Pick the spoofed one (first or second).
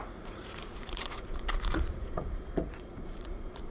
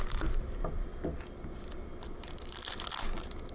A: first